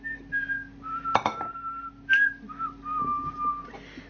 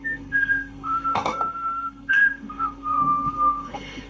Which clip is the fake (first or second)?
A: second